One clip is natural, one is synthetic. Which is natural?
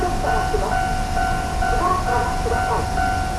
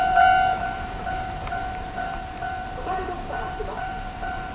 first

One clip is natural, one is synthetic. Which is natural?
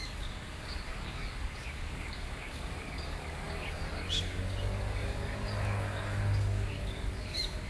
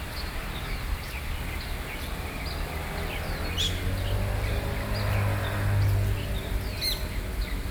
second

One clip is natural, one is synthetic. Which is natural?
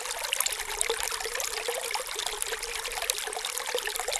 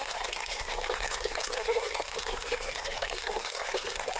first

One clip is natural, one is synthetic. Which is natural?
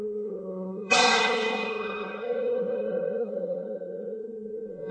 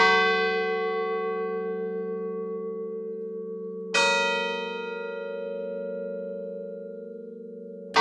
second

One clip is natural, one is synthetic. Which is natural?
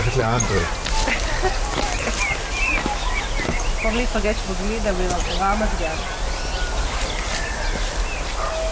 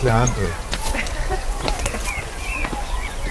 first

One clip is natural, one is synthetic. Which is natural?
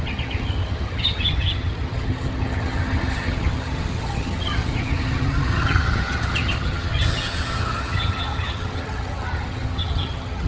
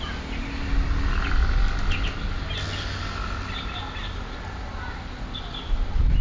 second